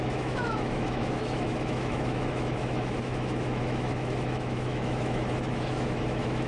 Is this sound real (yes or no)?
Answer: no